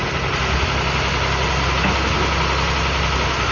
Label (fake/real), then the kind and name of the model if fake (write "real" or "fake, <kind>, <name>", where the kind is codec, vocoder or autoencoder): real